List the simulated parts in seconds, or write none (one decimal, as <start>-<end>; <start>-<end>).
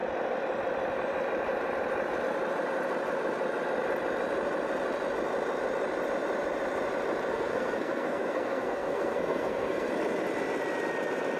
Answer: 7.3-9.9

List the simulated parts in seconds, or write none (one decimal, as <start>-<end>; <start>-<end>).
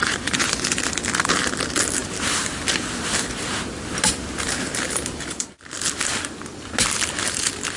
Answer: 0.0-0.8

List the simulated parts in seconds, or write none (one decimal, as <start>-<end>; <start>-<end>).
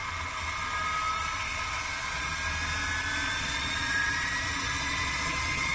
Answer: 1.4-2.3; 3.4-5.7